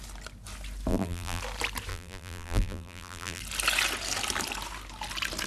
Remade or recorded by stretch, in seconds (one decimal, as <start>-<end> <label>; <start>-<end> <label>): 0.0-0.9 recorded; 0.9-1.4 remade; 1.4-1.9 recorded; 1.9-3.4 remade; 3.4-5.5 recorded